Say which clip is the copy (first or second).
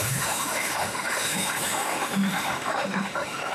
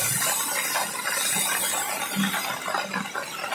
first